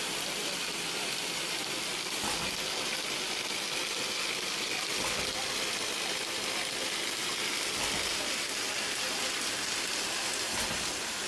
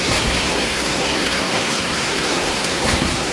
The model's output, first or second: second